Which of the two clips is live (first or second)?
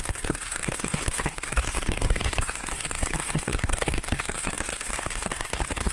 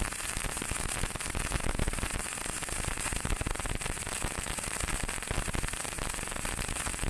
second